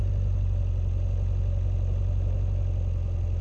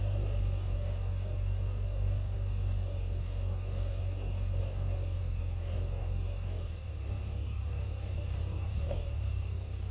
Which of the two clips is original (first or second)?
first